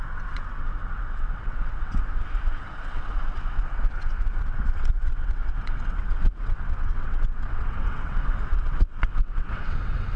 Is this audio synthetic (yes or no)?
yes